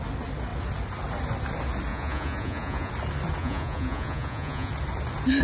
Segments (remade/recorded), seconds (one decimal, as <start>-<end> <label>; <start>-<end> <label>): 0.0-1.9 recorded; 1.9-2.9 remade; 2.9-3.4 recorded; 3.4-4.7 remade; 4.7-5.4 recorded